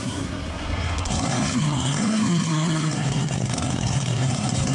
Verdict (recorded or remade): remade